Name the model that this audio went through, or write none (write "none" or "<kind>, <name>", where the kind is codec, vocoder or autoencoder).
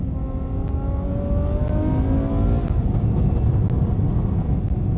none